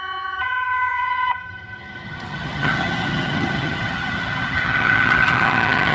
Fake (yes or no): yes